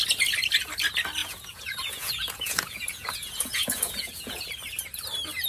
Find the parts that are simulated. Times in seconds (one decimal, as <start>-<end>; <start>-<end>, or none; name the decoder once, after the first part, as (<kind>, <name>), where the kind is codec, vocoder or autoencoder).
1.2-4.5 (vocoder, Vocos)